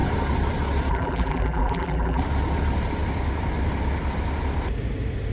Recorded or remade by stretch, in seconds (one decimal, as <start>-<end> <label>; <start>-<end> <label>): 0.0-0.9 recorded; 0.9-2.2 remade; 2.2-5.3 recorded